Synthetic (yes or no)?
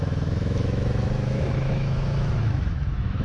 yes